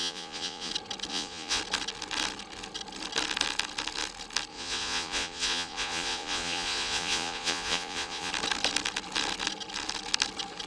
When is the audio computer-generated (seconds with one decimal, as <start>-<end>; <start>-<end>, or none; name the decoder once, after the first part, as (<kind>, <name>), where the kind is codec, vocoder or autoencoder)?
0.0-0.7 (vocoder, Vocos); 1.1-1.6; 4.5-8.3